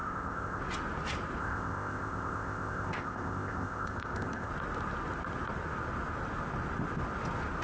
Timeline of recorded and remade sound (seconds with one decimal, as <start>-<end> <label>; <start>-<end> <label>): 0.0-0.6 remade; 0.6-1.4 recorded; 1.4-4.5 remade; 4.5-7.6 recorded